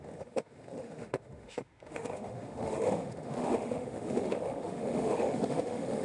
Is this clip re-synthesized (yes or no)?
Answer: yes